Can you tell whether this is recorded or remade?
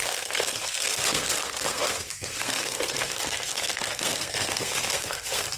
remade